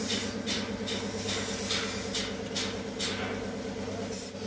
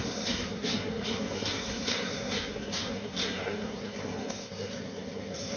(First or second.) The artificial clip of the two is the second